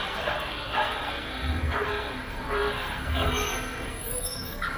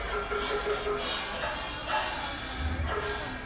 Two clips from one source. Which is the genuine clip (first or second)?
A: second